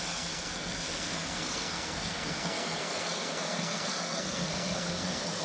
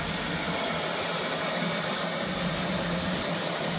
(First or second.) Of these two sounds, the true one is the second